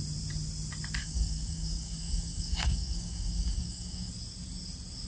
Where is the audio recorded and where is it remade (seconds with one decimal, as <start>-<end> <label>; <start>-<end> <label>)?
0.0-1.0 recorded; 1.0-4.1 remade; 4.1-5.1 recorded